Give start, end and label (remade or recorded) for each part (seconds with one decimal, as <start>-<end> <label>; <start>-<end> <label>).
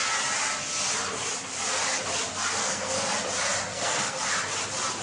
0.0-2.6 recorded; 2.6-3.1 remade; 3.1-3.7 recorded; 3.7-4.2 remade; 4.2-5.0 recorded